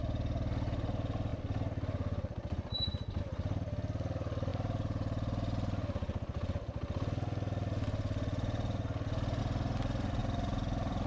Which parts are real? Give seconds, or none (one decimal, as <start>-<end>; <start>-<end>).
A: 0.0-10.2